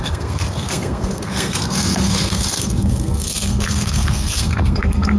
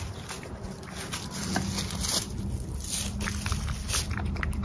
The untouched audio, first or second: second